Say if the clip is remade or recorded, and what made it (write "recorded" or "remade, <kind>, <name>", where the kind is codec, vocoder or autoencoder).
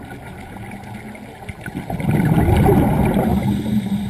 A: recorded